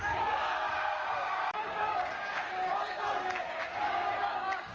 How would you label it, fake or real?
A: fake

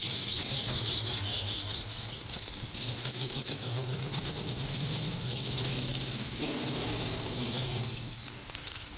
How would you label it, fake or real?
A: fake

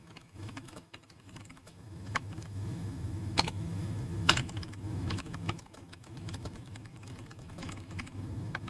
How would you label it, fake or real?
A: fake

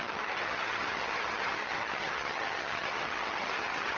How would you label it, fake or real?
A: fake